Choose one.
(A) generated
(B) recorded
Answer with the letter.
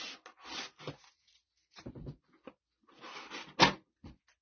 B